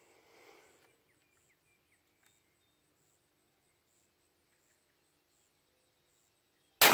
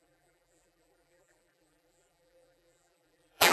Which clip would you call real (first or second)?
first